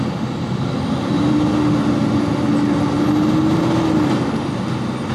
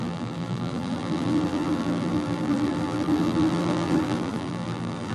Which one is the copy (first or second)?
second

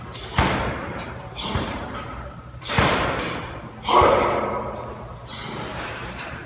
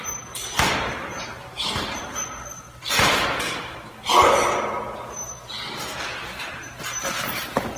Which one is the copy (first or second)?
first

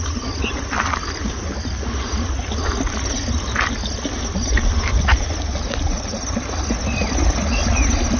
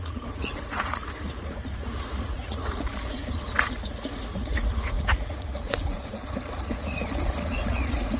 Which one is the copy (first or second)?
second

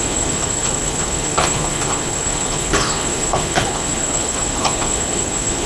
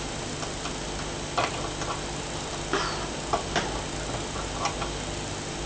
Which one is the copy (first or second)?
first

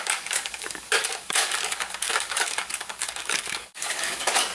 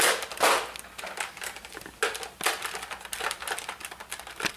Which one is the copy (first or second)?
first